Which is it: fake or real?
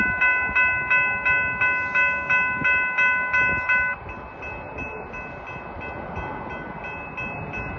real